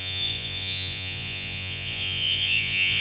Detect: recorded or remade remade